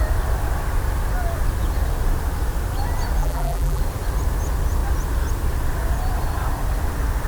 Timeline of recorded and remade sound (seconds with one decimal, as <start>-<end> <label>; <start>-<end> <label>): 0.0-3.2 recorded; 3.2-3.8 remade; 3.8-7.3 recorded